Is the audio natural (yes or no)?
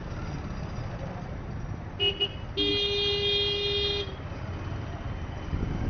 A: yes